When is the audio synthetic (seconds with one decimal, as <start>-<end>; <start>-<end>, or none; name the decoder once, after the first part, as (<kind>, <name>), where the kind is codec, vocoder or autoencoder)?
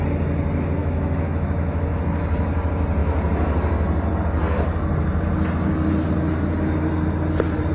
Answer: 0.8-2.0 (autoencoder, DAC-VAE)